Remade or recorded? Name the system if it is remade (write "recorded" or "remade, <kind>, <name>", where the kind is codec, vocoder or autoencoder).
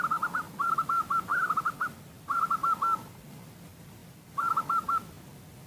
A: remade, vocoder, BigVGAN v2